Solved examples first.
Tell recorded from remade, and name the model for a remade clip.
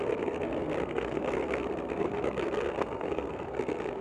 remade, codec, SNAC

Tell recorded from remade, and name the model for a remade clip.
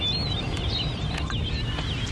recorded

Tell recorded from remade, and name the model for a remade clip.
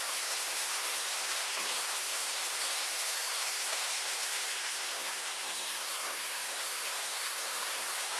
remade, codec, SNAC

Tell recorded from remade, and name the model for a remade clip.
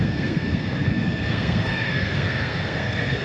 remade, codec, SNAC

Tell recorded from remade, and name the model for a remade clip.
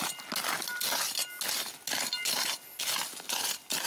recorded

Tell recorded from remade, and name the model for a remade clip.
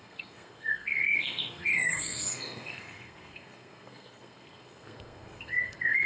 remade, codec, SNAC